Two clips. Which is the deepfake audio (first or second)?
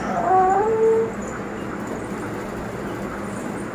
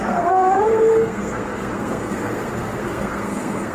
second